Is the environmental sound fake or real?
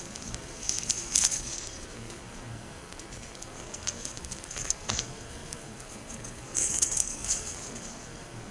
fake